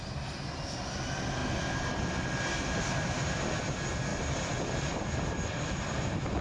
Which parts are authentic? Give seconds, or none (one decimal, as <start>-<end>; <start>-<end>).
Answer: 0.0-1.4; 3.4-4.1; 5.8-6.4